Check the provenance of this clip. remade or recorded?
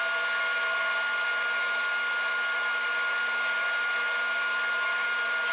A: recorded